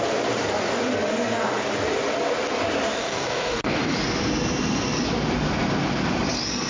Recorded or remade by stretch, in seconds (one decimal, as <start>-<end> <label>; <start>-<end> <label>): 0.0-3.0 recorded; 3.0-3.8 remade; 3.8-6.7 recorded